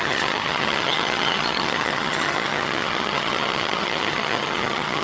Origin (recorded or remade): remade